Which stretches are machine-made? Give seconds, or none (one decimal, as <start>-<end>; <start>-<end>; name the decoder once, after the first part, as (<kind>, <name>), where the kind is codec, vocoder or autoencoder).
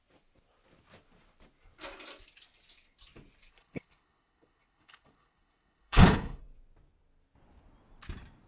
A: 3.5-6.4 (codec, HILCodec)